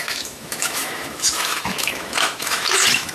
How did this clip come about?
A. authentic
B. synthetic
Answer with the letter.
B